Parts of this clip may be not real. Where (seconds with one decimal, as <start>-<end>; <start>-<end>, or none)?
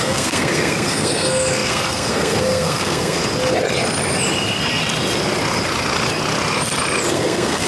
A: 0.0-3.2; 7.1-7.7